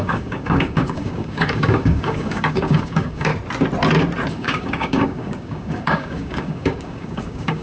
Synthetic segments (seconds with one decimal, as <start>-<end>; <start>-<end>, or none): 0.0-3.3; 4.3-7.6